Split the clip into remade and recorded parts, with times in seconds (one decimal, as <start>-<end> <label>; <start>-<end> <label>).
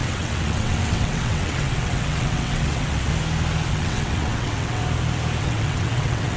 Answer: 0.0-3.1 remade; 3.1-3.7 recorded; 3.7-4.8 remade; 4.8-5.4 recorded; 5.4-6.4 remade